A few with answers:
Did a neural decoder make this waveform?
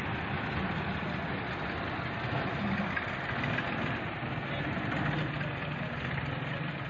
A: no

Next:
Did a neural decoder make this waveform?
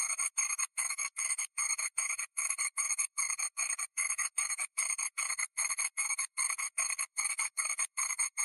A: yes